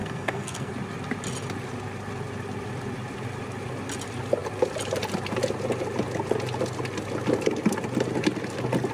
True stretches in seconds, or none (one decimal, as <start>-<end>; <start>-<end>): 0.7-8.9